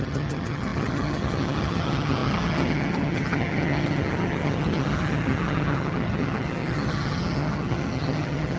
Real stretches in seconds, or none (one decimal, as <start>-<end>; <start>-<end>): none